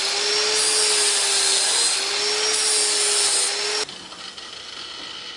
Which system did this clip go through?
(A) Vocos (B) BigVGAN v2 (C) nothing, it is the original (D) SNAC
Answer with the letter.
C